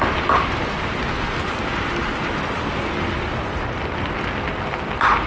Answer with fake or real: real